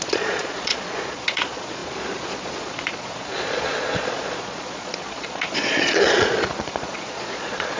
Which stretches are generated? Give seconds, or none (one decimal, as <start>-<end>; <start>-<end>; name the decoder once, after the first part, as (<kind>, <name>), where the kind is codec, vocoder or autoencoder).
0.0-7.8 (vocoder, Vocos)